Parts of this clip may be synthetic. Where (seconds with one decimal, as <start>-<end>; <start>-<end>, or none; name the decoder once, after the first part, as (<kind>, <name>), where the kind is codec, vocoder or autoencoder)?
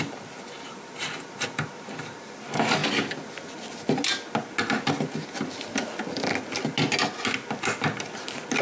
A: 0.0-2.4 (vocoder, BigVGAN v2)